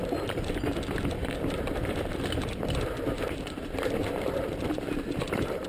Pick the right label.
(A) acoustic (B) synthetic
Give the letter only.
B